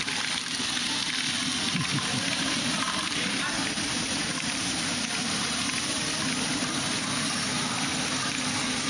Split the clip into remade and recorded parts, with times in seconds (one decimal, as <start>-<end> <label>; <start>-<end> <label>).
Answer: 0.0-2.1 recorded; 2.1-5.5 remade; 5.5-8.9 recorded